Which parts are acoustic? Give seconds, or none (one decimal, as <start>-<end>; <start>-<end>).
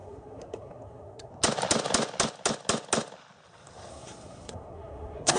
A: 1.3-3.9